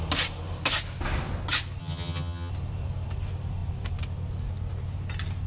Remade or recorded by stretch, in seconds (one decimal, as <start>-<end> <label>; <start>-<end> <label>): 0.0-1.8 recorded; 1.8-2.5 remade; 2.5-5.5 recorded